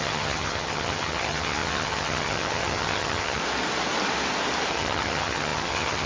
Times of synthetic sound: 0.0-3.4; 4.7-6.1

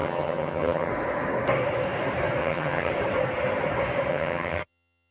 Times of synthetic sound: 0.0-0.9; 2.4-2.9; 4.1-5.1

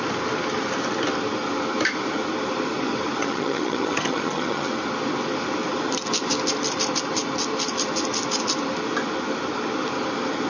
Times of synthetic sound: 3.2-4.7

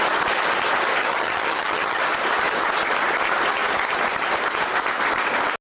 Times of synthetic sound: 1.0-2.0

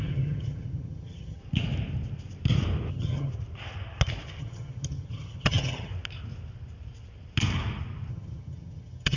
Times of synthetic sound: 0.0-1.4; 2.9-3.3; 4.4-5.9; 8.1-9.2

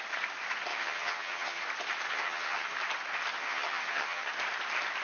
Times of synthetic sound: 0.7-1.6; 2.1-2.7; 3.4-4.3